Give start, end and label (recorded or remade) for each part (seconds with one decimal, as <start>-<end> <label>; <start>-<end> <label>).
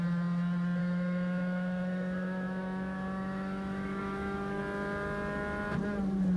0.0-0.8 recorded; 0.8-4.6 remade; 4.6-6.4 recorded